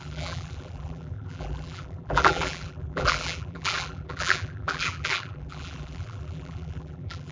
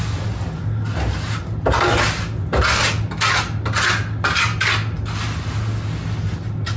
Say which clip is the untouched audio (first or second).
second